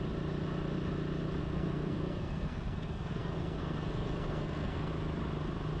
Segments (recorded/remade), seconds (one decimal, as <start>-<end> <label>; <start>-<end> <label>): 0.0-1.4 recorded; 1.4-4.9 remade; 4.9-5.8 recorded